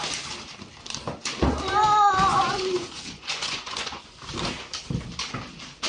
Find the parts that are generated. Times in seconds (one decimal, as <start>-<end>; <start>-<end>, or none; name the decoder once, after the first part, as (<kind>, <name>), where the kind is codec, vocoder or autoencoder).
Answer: 2.3-4.2 (vocoder, Vocos)